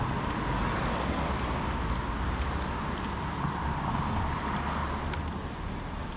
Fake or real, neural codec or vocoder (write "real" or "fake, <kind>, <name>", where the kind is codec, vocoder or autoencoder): real